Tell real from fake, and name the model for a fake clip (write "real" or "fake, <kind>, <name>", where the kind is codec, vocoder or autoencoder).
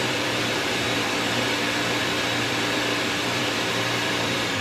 fake, vocoder, BigVGAN v2